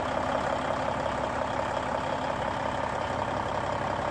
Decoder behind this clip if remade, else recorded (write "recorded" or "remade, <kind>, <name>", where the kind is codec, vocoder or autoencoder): recorded